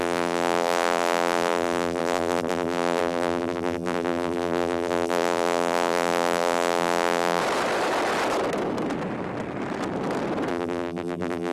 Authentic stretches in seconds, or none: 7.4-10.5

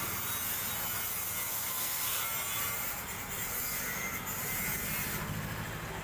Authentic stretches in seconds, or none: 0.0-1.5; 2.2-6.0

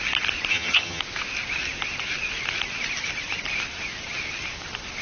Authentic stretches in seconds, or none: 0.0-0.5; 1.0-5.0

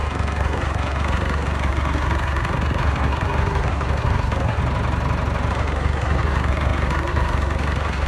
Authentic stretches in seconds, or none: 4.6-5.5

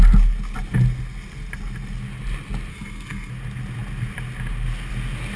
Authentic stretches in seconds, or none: 0.0-2.7; 3.3-5.4

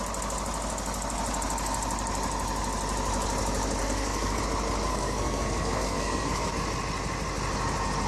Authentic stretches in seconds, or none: 0.0-3.8; 4.4-4.9; 6.5-8.1

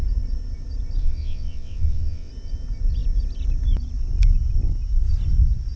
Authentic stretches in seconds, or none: 0.0-1.0; 2.3-5.8